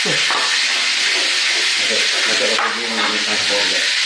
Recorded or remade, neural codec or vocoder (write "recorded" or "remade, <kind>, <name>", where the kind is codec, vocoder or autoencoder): recorded